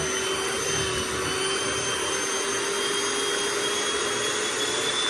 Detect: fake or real real